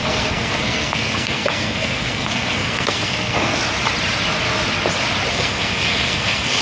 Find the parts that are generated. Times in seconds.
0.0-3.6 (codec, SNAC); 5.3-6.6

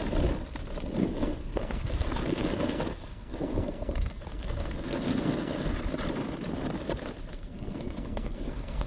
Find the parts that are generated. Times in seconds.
1.0-5.7 (codec, SNAC); 7.3-8.9

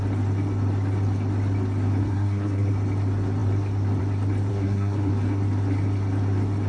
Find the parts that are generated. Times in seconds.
2.0-2.7 (codec, SNAC); 4.5-5.1

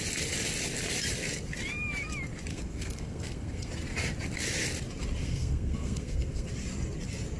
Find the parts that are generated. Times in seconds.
2.5-3.7 (codec, SNAC); 5.2-6.5

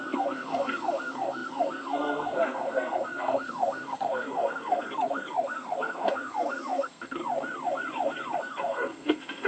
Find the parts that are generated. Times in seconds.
0.0-7.2 (codec, SNAC); 8.4-9.5

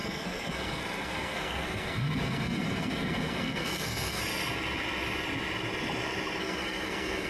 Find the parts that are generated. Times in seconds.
0.0-4.2 (codec, SNAC); 6.4-7.3

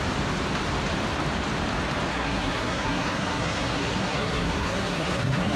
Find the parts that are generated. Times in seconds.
2.1-5.6 (codec, SNAC)